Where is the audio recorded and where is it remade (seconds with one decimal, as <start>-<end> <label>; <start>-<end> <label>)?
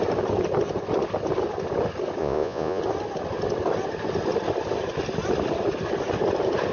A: 0.0-2.2 recorded; 2.2-2.8 remade; 2.8-6.7 recorded